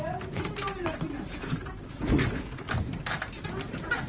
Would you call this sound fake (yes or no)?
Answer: yes